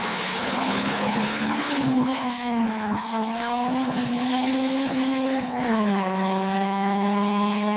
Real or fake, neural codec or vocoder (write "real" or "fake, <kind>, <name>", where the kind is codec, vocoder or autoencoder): fake, codec, HILCodec